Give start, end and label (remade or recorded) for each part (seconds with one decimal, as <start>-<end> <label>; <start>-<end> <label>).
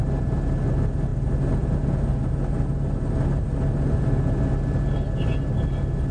0.0-6.1 recorded